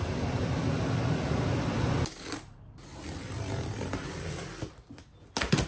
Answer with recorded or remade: recorded